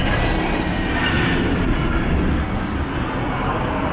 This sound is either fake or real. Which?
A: real